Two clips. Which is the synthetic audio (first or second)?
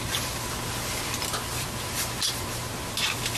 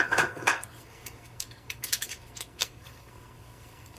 second